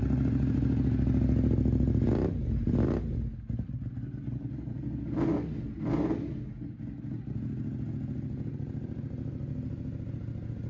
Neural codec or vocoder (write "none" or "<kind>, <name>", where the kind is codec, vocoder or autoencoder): none